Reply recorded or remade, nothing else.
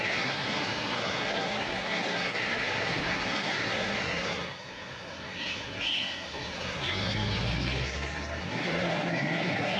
remade